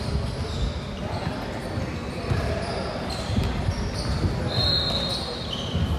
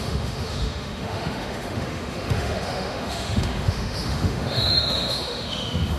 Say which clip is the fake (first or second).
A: second